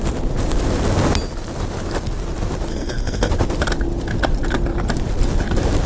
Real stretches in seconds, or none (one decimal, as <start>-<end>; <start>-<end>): 0.0-2.7; 3.3-5.9